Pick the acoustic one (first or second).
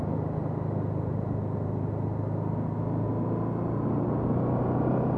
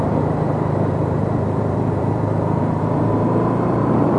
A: first